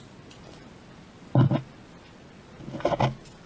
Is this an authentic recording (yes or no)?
yes